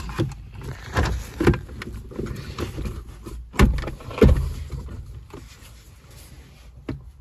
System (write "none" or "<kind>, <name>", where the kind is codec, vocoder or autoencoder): none